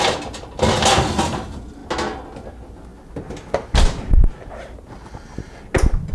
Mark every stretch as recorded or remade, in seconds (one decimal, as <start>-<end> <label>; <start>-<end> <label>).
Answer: 0.0-6.1 recorded